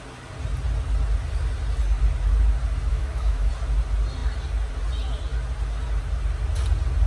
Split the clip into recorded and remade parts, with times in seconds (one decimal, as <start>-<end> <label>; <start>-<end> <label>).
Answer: 0.0-2.9 recorded; 2.9-3.5 remade; 3.5-7.1 recorded

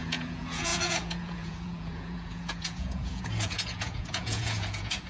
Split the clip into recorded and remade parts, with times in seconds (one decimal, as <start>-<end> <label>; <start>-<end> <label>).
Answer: 0.0-5.1 remade

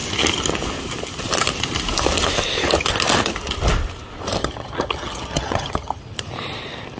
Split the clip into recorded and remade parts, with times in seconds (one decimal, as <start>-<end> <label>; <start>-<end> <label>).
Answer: 0.0-4.4 recorded; 4.4-6.0 remade; 6.0-7.0 recorded

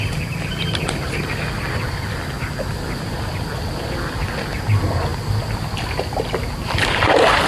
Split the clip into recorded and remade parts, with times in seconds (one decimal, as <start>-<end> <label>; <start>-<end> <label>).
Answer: 0.0-7.5 recorded

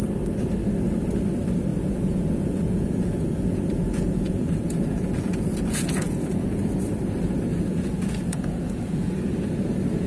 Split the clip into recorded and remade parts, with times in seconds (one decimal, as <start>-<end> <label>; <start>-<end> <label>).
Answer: 0.0-1.7 recorded; 1.7-6.7 remade; 6.7-7.5 recorded; 7.5-9.1 remade; 9.1-10.1 recorded

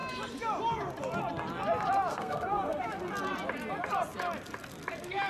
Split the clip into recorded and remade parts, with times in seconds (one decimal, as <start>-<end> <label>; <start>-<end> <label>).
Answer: 0.0-2.1 recorded; 2.1-3.0 remade; 3.0-5.3 recorded

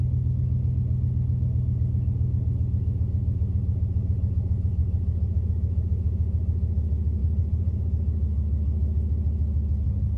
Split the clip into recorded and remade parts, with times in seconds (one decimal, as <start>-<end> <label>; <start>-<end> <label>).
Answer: 0.0-7.2 recorded; 7.2-7.8 remade; 7.8-10.2 recorded